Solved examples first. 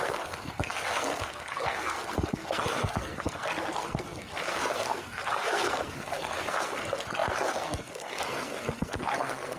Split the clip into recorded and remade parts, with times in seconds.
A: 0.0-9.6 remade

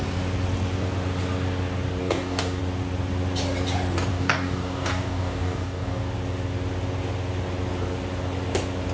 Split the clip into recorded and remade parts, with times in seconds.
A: 0.0-2.0 recorded; 2.0-2.6 remade; 2.6-4.1 recorded; 4.1-6.0 remade; 6.0-8.9 recorded